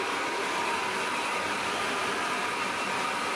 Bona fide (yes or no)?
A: yes